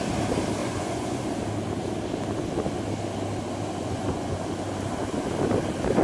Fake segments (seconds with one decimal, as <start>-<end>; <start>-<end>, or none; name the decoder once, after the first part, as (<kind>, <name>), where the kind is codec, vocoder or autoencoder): 0.6-1.2 (vocoder, Vocos); 3.8-4.4